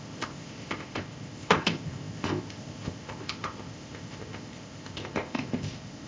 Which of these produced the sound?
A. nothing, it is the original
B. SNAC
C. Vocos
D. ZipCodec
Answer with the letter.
D